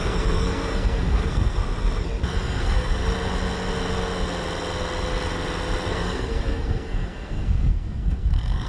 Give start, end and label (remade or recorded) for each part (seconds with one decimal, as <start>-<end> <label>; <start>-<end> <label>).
0.0-1.6 remade; 1.6-2.6 recorded; 2.6-3.0 remade; 3.0-5.9 recorded; 5.9-8.7 remade